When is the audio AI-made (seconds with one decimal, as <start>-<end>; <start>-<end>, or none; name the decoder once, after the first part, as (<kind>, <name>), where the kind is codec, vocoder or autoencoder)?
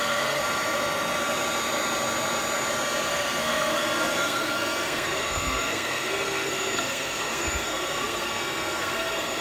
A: 0.0-0.4 (codec, SNAC); 3.1-9.4